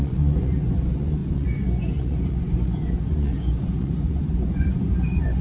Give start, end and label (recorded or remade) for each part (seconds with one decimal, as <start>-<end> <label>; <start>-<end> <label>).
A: 0.0-5.4 remade